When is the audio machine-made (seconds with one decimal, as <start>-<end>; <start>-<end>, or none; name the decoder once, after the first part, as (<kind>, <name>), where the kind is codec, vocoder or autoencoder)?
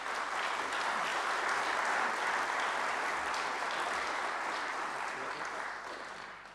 none